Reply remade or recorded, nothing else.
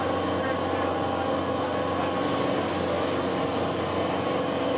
recorded